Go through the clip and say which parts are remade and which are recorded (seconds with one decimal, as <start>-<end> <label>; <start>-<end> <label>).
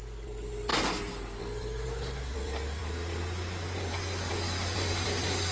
0.0-5.5 recorded